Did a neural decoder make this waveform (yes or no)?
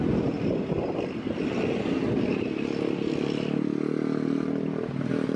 no